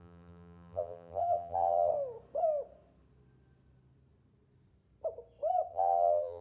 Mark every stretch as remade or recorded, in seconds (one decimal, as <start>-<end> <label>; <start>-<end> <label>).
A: 0.0-1.9 remade; 1.9-5.7 recorded; 5.7-6.4 remade

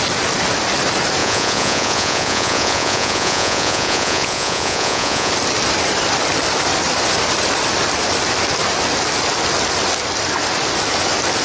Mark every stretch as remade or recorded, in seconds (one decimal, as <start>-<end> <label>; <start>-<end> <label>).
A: 0.0-1.2 recorded; 1.2-5.3 remade; 5.3-11.4 recorded

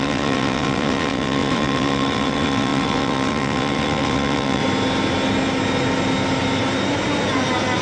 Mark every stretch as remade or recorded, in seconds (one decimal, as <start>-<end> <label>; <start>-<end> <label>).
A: 0.0-4.6 remade; 4.6-7.8 recorded

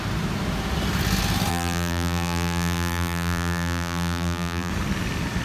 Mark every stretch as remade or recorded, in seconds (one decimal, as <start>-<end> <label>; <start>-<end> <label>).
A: 0.0-1.5 recorded; 1.5-4.7 remade; 4.7-5.4 recorded

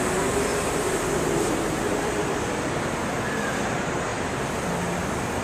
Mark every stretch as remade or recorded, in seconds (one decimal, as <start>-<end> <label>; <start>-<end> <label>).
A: 0.0-0.5 recorded; 0.5-2.7 remade; 2.7-4.1 recorded; 4.1-4.7 remade; 4.7-5.4 recorded